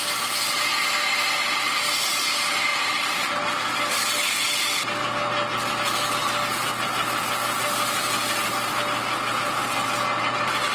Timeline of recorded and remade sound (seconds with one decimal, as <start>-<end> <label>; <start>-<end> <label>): 0.0-2.7 recorded; 2.7-3.3 remade; 3.3-10.7 recorded